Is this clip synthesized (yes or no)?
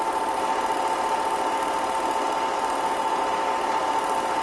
no